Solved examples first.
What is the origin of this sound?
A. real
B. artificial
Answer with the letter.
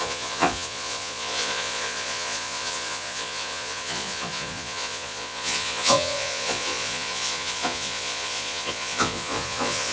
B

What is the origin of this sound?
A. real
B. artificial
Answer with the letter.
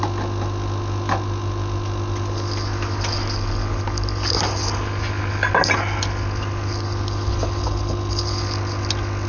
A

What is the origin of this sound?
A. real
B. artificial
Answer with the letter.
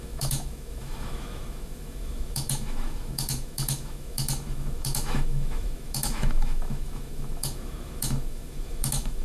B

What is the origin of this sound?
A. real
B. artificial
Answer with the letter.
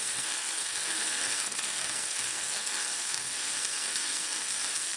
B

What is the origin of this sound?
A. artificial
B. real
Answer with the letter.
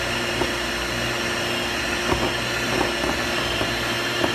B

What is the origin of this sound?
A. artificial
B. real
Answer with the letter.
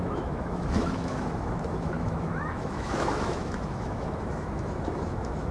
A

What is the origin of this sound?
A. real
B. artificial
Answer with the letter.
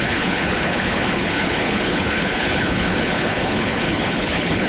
B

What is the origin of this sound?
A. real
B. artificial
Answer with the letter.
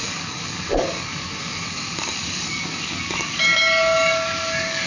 B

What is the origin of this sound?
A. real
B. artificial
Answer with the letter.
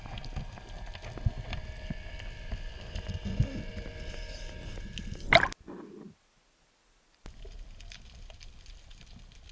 A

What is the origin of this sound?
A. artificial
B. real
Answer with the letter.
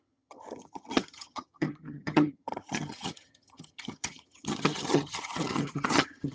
A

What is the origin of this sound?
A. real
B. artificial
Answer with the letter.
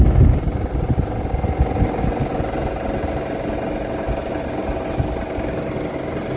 A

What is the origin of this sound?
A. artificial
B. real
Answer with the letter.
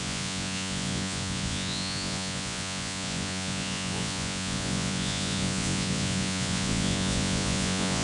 A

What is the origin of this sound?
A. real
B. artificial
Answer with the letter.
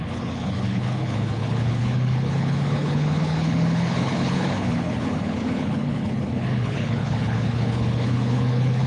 B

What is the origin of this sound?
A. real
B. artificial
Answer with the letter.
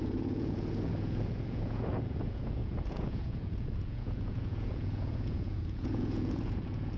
B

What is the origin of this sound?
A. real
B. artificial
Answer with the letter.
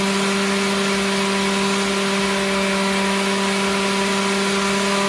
A